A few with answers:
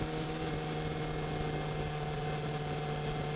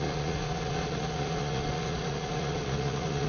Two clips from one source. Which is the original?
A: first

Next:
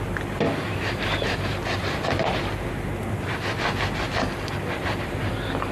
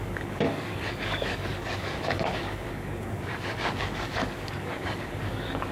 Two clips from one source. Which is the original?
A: first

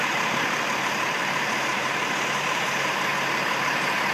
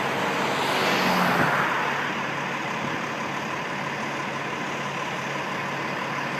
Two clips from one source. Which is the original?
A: second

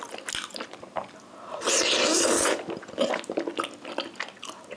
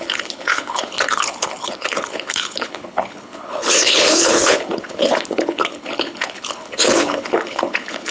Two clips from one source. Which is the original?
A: first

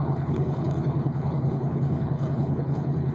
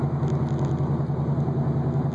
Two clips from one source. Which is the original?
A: second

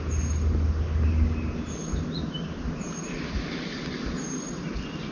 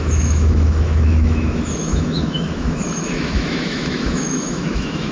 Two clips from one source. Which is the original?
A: first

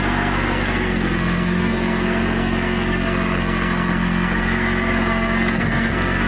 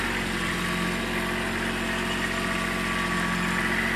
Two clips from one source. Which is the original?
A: second